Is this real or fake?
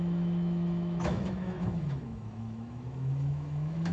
fake